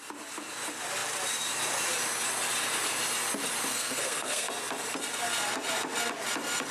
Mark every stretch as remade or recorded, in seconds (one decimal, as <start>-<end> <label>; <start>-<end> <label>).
0.0-3.7 recorded; 3.7-4.5 remade; 4.5-6.7 recorded